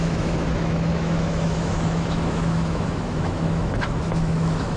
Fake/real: fake